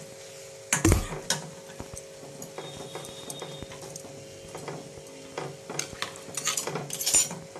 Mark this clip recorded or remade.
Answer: recorded